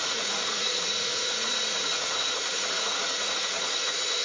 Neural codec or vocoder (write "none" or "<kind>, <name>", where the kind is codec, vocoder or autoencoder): vocoder, Vocos